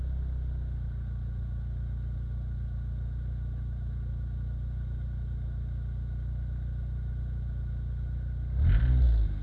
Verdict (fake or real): real